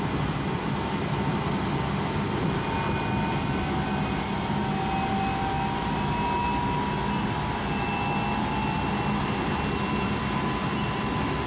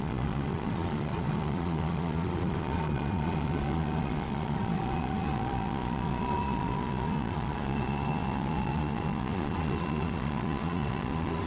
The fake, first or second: second